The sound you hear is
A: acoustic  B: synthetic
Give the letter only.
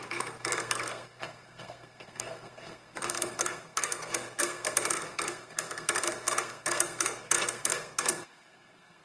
B